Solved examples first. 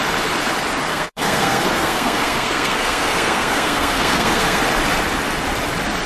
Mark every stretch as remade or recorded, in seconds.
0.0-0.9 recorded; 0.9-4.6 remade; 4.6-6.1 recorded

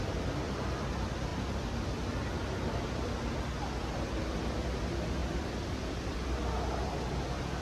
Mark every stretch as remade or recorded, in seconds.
0.0-5.2 recorded; 5.2-6.0 remade; 6.0-7.6 recorded

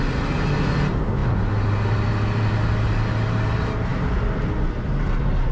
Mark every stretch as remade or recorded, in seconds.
0.0-5.5 recorded

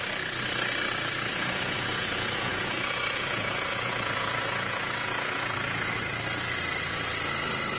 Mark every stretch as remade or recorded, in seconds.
0.0-1.3 recorded; 1.3-6.0 remade; 6.0-7.8 recorded

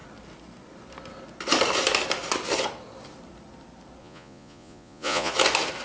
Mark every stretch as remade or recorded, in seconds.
0.0-4.0 recorded; 4.0-5.3 remade; 5.3-5.8 recorded

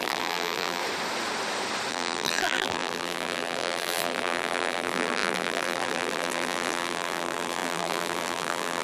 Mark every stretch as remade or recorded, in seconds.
0.0-0.8 remade; 0.8-1.9 recorded; 1.9-8.8 remade

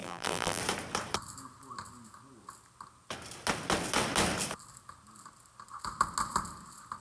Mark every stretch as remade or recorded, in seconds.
0.0-0.6 remade; 0.6-7.0 recorded